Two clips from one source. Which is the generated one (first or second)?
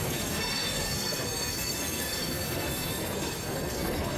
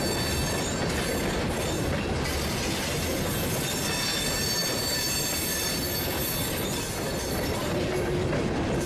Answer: first